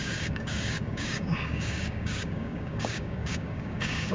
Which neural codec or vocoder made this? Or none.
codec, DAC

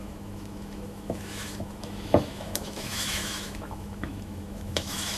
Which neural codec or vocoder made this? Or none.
autoencoder, DAC-VAE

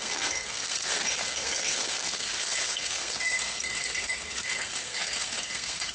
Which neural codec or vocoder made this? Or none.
codec, SNAC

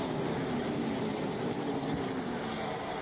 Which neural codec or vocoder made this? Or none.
none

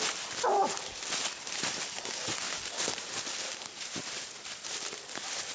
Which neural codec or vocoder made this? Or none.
vocoder, BigVGAN v2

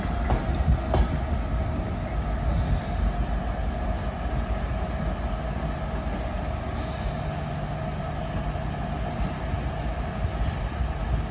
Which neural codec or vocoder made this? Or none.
none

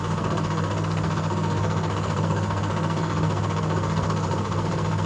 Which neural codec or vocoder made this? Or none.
codec, SNAC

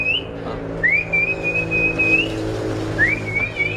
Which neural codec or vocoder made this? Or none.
none